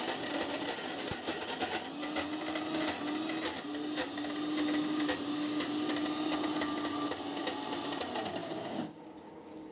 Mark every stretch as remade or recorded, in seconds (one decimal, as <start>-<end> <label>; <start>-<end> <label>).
0.0-8.4 recorded; 8.4-9.7 remade

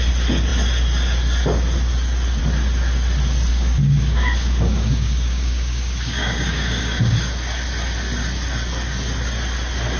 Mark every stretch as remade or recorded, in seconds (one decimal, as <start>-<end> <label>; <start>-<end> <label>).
0.0-3.5 recorded; 3.5-7.2 remade; 7.2-10.0 recorded